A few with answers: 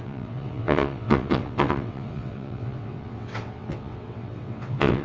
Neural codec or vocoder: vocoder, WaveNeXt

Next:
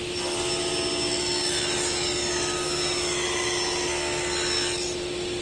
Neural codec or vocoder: none